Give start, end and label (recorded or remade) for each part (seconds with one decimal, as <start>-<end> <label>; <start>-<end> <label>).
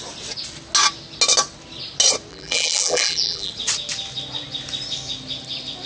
0.0-2.3 recorded; 2.3-3.5 remade; 3.5-5.9 recorded